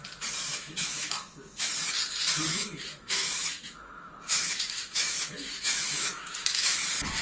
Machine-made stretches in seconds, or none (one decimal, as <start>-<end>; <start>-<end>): 0.5-1.7; 2.5-6.8